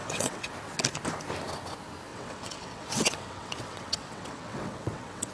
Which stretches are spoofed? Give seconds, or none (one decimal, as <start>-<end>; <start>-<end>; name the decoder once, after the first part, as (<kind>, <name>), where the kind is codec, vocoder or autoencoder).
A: 0.0-0.5 (vocoder, WaveNeXt); 2.1-5.3